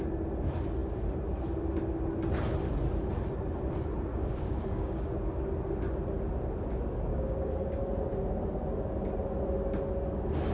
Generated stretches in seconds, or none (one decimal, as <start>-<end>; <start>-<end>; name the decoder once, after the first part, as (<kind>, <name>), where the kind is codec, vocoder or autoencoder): 4.1-5.4 (codec, DAC); 7.1-7.8